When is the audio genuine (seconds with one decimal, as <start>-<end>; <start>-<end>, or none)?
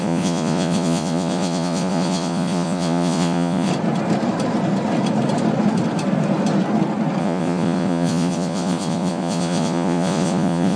3.7-7.2